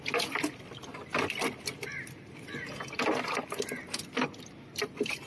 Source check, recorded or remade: recorded